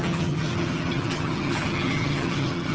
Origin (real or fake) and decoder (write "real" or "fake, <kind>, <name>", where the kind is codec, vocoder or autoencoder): fake, vocoder, HiFi-GAN